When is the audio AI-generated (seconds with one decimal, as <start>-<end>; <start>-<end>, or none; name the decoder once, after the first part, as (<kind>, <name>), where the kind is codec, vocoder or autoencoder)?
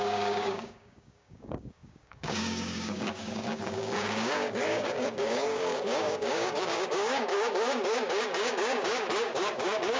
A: 0.0-10.0 (codec, DAC)